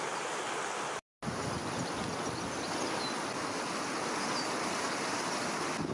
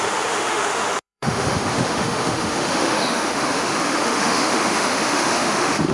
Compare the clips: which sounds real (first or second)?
first